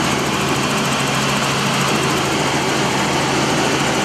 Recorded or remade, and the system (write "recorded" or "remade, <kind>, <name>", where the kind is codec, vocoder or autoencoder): recorded